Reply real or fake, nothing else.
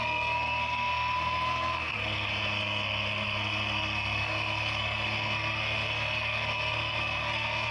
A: fake